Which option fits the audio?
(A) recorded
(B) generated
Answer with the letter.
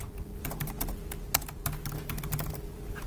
A